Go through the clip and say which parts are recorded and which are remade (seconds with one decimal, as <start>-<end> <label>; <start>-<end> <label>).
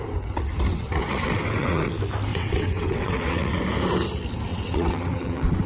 0.0-0.7 recorded; 0.7-1.9 remade; 1.9-2.3 recorded; 2.3-3.6 remade; 3.6-4.5 recorded; 4.5-5.7 remade